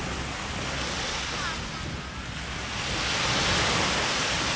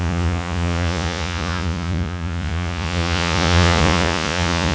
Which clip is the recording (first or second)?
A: first